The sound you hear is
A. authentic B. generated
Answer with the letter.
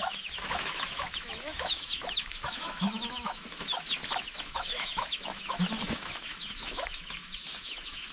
B